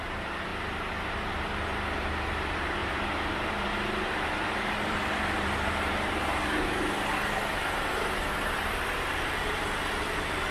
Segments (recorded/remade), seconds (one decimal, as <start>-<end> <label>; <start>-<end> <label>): 0.0-0.5 remade; 0.5-1.3 recorded; 1.3-6.3 remade; 6.3-10.5 recorded